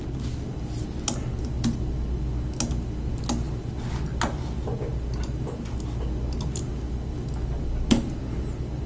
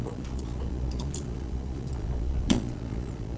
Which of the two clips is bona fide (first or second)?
first